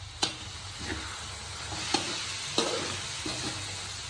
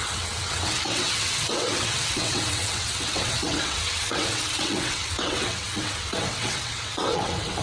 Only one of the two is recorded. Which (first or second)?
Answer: first